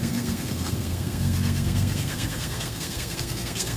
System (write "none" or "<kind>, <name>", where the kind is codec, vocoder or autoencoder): codec, SNAC